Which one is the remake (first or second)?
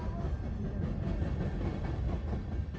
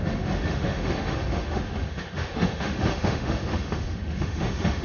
second